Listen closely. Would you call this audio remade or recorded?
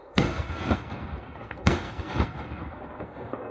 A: remade